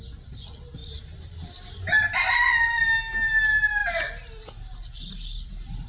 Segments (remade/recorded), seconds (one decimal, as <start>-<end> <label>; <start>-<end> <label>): 0.0-5.9 recorded

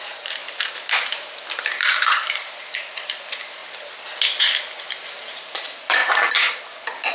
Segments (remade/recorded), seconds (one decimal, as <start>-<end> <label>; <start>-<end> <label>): 0.0-0.4 remade; 0.4-1.6 recorded; 1.6-3.6 remade; 3.6-4.8 recorded; 4.8-6.0 remade; 6.0-7.1 recorded

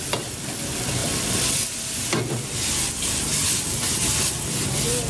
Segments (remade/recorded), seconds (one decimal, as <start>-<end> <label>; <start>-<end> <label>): 0.0-1.0 recorded; 1.0-2.2 remade; 2.2-5.1 recorded

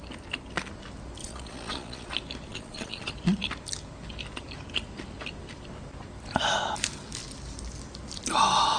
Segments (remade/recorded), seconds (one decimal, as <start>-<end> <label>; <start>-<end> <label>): 0.0-1.2 recorded; 1.2-2.1 remade; 2.1-2.5 recorded; 2.5-3.1 remade; 3.1-8.8 recorded

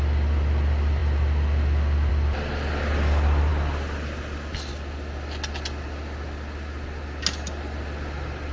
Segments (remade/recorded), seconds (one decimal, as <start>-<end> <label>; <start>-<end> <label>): 0.0-8.5 recorded